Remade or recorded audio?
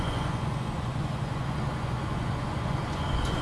remade